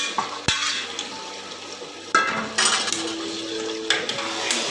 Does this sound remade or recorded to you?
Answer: recorded